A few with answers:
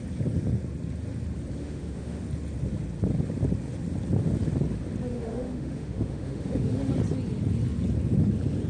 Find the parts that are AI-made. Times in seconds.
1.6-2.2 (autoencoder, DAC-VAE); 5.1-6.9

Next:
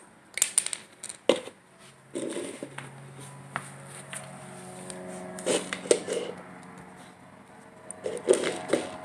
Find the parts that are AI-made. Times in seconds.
none

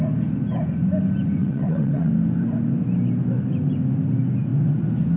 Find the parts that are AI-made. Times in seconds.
1.4-2.1 (vocoder, WaveNeXt)

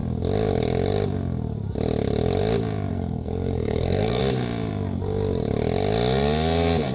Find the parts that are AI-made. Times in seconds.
2.9-4.2 (codec, SNAC)